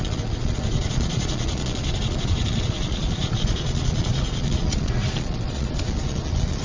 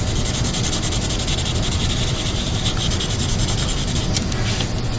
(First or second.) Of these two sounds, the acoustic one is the second